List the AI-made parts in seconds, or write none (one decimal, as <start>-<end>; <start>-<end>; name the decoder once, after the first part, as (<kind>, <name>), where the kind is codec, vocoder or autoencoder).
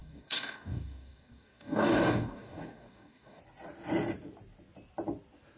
0.0-3.4 (codec, DAC)